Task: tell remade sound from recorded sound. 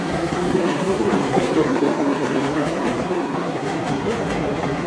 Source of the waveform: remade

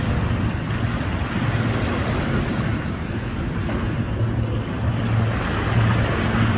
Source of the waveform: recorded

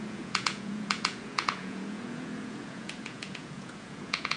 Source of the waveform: remade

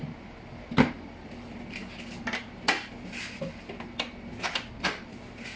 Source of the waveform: recorded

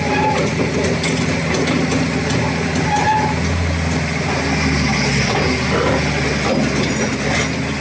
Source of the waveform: recorded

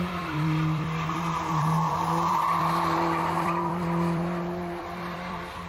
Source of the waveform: remade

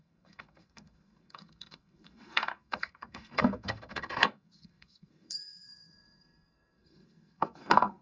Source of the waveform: remade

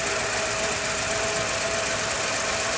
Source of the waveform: recorded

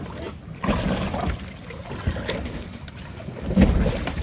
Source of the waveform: recorded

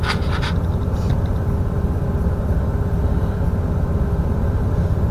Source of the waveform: recorded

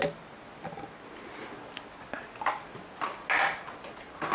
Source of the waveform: recorded